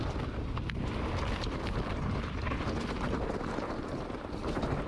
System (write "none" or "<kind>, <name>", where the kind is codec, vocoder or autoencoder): none